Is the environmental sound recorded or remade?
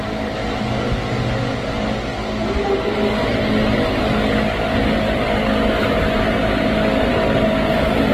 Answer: recorded